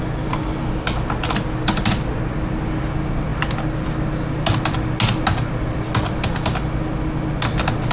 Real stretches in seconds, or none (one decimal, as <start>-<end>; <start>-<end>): 0.0-7.9